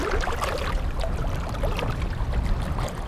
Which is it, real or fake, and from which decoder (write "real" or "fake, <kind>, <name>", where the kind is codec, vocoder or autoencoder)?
fake, vocoder, BigVGAN v2